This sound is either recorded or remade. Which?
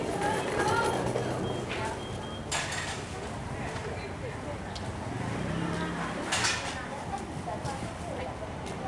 recorded